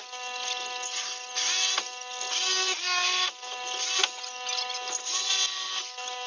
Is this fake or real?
real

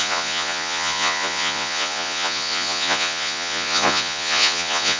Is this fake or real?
fake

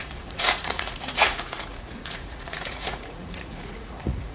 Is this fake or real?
fake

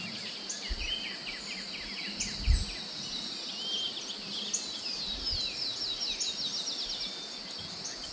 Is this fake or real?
real